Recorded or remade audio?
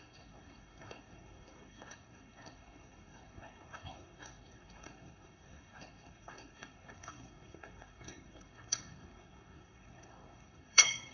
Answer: remade